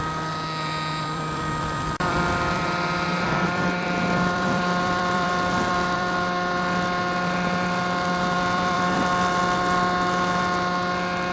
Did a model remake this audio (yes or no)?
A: yes